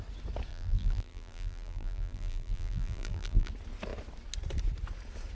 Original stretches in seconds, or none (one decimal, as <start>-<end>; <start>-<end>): 0.0-0.5; 3.5-5.3